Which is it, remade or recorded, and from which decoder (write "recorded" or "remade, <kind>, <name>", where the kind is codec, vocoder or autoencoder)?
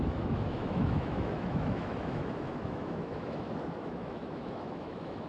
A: remade, autoencoder, DAC-VAE